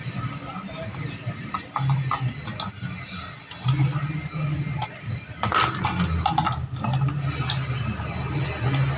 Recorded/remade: recorded